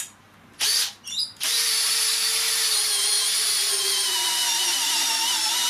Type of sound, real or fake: real